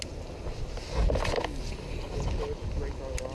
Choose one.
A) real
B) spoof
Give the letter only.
A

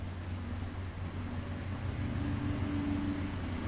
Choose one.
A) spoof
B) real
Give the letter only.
B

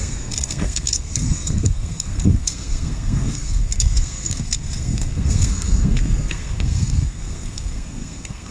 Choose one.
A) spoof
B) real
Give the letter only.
A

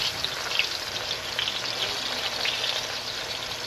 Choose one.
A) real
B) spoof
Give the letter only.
A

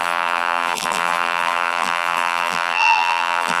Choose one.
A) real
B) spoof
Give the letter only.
B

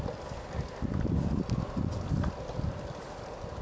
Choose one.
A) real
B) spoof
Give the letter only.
A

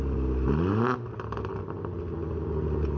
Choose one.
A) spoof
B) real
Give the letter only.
B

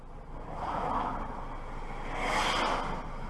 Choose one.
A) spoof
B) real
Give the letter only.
B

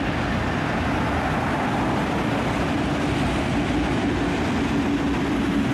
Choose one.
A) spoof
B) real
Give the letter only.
B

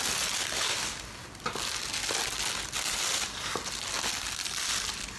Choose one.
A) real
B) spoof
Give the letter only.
A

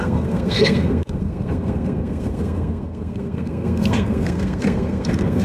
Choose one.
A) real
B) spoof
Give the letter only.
B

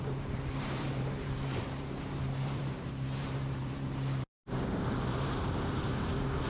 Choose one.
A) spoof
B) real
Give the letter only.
A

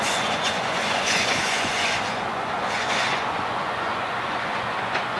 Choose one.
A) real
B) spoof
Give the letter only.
B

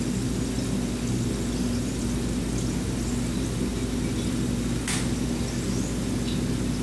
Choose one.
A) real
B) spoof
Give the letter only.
A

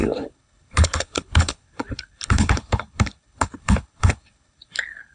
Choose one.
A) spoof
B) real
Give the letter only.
A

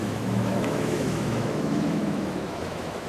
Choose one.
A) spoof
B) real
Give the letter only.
A